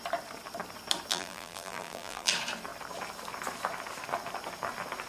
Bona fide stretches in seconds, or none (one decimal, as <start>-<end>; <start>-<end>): 0.0-1.1; 2.3-5.1